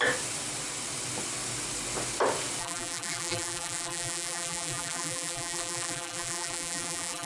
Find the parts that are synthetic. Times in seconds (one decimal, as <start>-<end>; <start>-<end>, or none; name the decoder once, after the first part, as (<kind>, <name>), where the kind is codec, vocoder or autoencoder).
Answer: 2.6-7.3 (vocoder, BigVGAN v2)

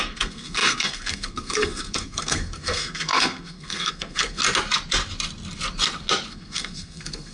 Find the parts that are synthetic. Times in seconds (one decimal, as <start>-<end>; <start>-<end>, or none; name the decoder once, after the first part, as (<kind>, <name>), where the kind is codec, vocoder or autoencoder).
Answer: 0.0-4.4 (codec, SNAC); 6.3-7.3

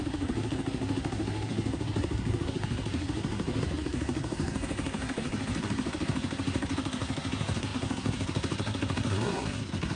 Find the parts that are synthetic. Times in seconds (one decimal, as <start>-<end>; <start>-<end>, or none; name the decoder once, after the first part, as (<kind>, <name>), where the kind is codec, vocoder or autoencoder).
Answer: 0.0-10.0 (codec, SNAC)